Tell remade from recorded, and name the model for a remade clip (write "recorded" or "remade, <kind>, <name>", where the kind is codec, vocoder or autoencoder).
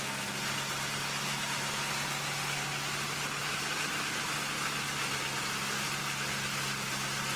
recorded